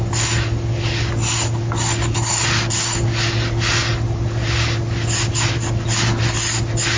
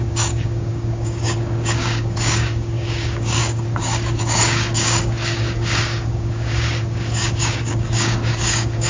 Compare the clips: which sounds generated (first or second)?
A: second